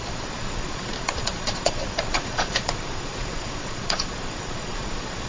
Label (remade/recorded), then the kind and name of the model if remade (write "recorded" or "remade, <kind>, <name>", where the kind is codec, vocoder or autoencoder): remade, vocoder, Vocos